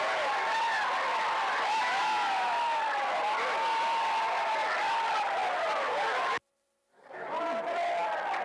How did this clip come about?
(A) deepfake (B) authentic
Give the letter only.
B